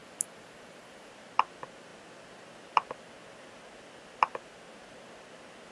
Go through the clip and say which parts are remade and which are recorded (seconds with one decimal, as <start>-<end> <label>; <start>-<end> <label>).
0.0-1.1 remade; 1.1-5.7 recorded

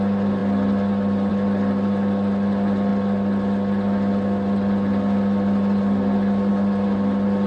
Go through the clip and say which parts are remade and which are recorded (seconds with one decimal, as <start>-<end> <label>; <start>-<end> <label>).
0.0-7.5 recorded

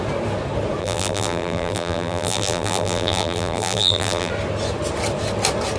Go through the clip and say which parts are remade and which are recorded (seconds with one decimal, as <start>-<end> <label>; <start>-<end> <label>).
0.0-0.8 recorded; 0.8-4.3 remade; 4.3-5.8 recorded

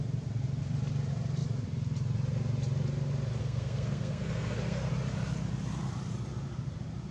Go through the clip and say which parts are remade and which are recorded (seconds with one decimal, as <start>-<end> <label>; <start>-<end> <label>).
0.0-3.4 recorded; 3.4-4.9 remade; 4.9-7.1 recorded

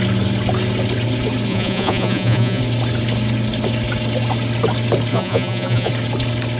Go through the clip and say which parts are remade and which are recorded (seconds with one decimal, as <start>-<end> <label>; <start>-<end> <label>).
0.0-1.5 recorded; 1.5-2.6 remade; 2.6-5.1 recorded; 5.1-5.9 remade; 5.9-6.6 recorded

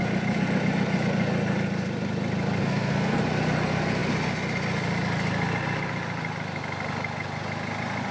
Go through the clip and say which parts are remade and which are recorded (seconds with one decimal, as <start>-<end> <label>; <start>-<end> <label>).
0.0-2.6 recorded; 2.6-3.2 remade; 3.2-8.1 recorded

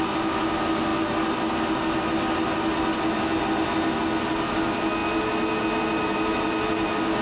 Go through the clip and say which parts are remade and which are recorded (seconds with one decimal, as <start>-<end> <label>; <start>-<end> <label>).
0.0-7.2 recorded